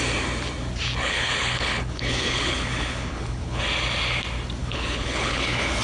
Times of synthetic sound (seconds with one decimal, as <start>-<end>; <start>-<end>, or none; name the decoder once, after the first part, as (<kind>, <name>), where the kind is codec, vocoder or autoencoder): 1.0-3.6 (codec, HILCodec); 4.6-5.8